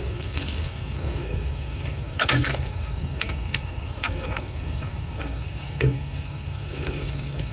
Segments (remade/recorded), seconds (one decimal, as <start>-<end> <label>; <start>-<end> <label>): 0.0-7.5 remade